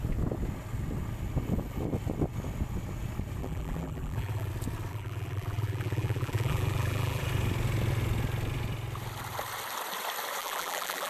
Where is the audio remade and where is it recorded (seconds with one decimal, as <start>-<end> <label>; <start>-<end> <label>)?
0.0-3.4 recorded; 3.4-4.5 remade; 4.5-4.9 recorded; 4.9-7.2 remade; 7.2-10.4 recorded; 10.4-11.1 remade